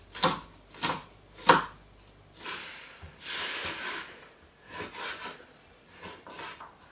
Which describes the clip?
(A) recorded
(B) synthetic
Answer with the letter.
A